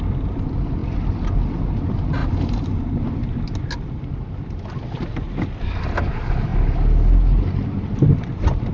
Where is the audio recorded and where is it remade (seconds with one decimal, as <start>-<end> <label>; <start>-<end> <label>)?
0.0-8.7 recorded